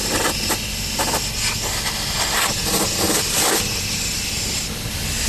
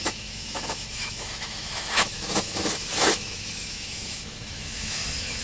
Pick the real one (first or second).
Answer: first